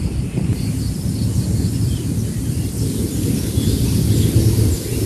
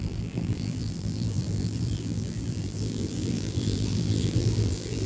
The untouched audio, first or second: first